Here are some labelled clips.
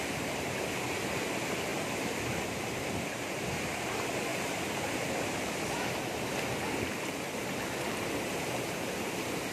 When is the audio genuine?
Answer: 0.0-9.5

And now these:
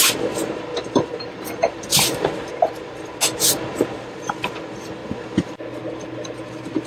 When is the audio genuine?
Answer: 3.1-3.7; 5.0-6.5

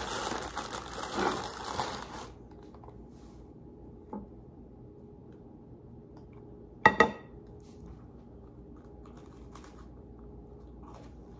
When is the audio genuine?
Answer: 0.0-11.4

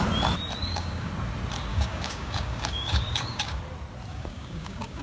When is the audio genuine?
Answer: 0.0-0.6; 1.1-1.7; 3.6-4.1

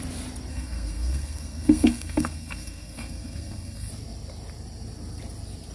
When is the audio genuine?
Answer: 0.0-0.5; 3.9-5.7

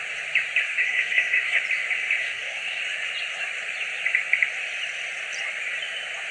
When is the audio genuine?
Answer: 0.0-0.6; 1.6-2.2; 2.8-6.3